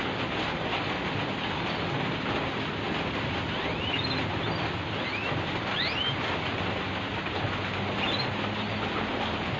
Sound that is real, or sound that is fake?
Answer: real